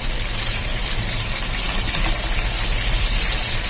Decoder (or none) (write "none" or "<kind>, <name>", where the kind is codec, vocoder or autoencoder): vocoder, BigVGAN v2